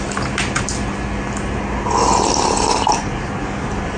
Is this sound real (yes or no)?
yes